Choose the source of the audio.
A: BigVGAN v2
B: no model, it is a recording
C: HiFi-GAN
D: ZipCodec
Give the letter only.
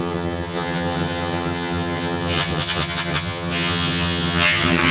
C